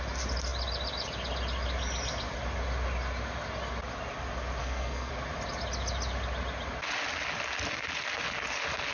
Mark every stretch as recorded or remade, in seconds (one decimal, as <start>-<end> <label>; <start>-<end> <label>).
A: 0.0-4.6 recorded; 4.6-5.1 remade; 5.1-8.9 recorded